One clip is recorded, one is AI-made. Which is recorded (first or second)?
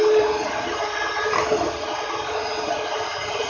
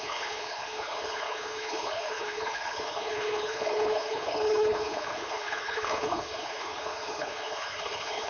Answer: first